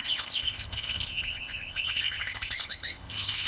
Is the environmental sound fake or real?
fake